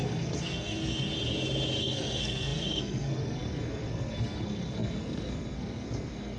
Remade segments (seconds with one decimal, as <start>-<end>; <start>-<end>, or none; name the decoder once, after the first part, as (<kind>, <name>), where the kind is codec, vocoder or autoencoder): 0.0-1.1 (codec, SNAC); 1.8-6.4